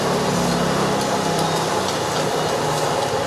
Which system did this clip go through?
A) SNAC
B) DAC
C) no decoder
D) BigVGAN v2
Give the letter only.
C